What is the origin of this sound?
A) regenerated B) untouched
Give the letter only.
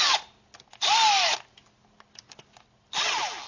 B